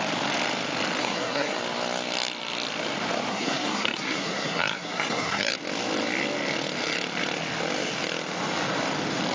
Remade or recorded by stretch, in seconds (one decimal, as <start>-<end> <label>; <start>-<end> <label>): 0.0-1.0 recorded; 1.0-1.6 remade; 1.6-3.3 recorded; 3.3-5.5 remade; 5.5-9.3 recorded